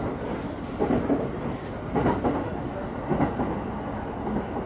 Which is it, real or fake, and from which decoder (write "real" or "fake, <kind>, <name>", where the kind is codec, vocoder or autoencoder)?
real